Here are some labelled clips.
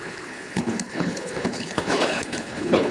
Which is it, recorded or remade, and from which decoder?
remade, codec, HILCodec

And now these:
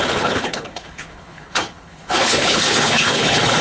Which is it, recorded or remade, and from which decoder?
remade, codec, HILCodec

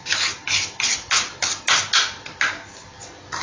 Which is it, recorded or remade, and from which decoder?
recorded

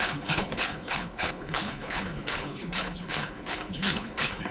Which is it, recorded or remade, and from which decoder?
remade, codec, HILCodec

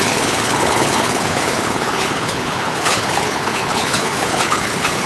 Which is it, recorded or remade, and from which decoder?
remade, codec, HILCodec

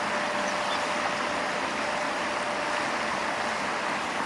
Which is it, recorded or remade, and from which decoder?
recorded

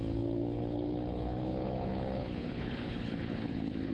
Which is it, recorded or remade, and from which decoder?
remade, codec, HILCodec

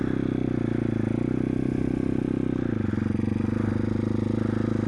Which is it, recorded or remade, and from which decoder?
recorded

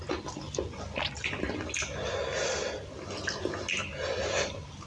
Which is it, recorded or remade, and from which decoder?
recorded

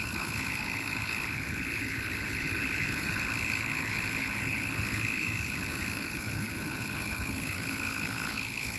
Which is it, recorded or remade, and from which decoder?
remade, codec, HILCodec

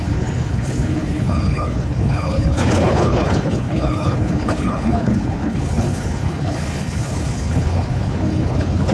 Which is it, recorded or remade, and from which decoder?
remade, codec, HILCodec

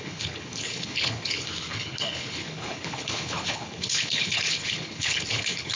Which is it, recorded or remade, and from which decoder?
remade, codec, HILCodec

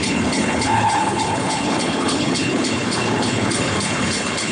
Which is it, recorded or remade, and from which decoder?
remade, codec, HILCodec